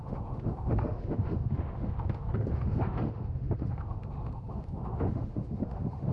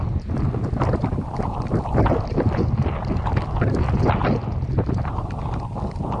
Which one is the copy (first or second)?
first